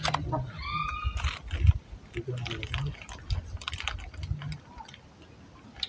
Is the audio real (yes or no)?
yes